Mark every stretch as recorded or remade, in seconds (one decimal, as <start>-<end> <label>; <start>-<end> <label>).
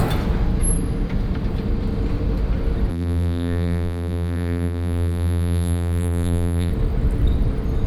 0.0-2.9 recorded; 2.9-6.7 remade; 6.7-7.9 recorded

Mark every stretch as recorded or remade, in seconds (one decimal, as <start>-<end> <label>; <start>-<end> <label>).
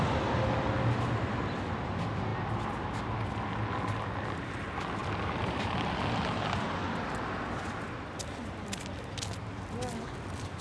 0.0-10.6 recorded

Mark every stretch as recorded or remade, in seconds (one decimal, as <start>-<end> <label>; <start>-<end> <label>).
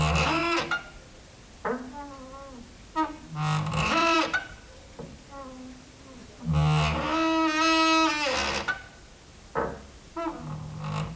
0.0-4.0 recorded; 4.0-5.4 remade; 5.4-11.2 recorded